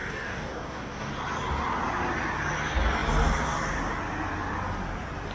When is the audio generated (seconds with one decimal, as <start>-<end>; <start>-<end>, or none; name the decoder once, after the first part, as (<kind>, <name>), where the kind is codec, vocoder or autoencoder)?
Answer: 0.0-1.1 (codec, DAC)